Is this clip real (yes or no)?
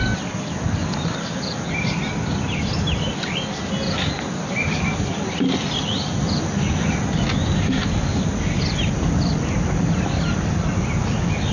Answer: yes